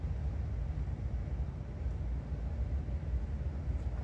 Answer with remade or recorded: recorded